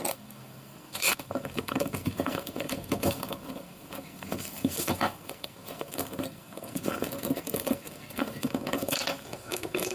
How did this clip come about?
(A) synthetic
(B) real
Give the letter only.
A